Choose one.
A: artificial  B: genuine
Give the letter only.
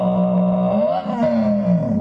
B